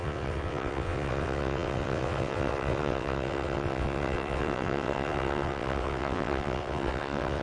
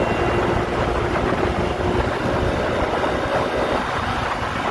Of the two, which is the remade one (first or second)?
first